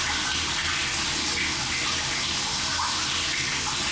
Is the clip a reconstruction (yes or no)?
no